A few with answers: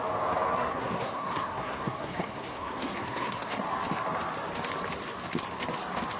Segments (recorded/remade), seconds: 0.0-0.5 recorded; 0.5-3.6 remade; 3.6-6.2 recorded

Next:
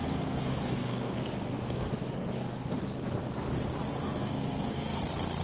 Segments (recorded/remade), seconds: 0.0-2.8 remade; 2.8-4.0 recorded; 4.0-5.0 remade; 5.0-5.4 recorded

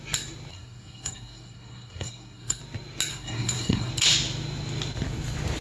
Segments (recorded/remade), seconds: 0.0-0.5 recorded; 0.5-2.6 remade; 2.6-3.1 recorded; 3.1-3.9 remade; 3.9-5.6 recorded

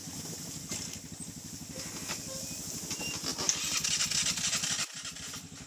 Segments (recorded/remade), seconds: 0.0-5.7 recorded